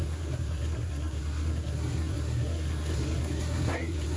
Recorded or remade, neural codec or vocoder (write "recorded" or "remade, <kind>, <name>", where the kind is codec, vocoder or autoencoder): remade, codec, SNAC